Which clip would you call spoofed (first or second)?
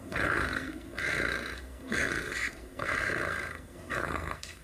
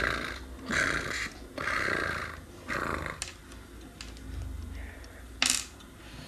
first